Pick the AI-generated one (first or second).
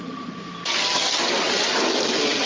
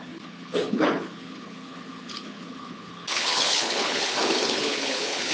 second